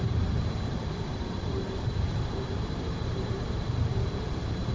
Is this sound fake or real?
fake